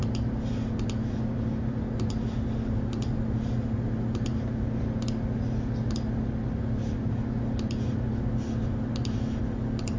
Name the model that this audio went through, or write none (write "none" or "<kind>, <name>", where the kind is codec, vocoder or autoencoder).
none